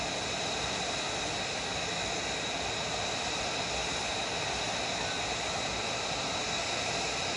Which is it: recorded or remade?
recorded